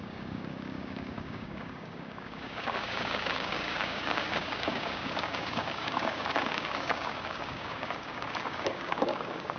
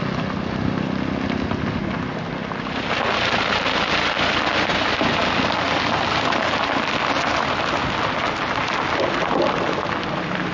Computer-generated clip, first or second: first